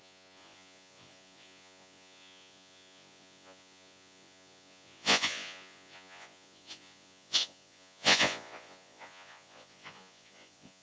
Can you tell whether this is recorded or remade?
remade